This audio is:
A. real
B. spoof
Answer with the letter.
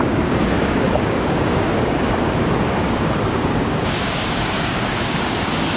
B